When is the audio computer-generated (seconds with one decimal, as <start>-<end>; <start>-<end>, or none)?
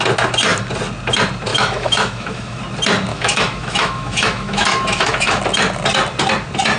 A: 1.5-2.6; 3.1-5.4